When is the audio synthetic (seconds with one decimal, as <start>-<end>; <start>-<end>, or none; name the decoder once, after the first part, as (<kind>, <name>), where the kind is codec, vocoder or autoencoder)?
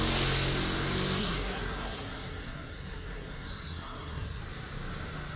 1.2-4.4 (codec, SNAC)